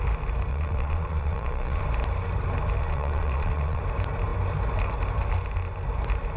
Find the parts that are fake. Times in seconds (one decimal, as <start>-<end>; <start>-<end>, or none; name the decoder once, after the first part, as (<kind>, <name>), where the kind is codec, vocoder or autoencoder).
0.5-1.8 (vocoder, Vocos); 2.8-3.8